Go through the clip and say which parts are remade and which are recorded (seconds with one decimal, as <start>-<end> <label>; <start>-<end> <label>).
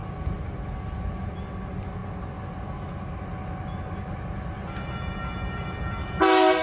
0.0-6.6 recorded